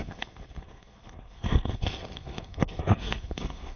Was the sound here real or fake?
fake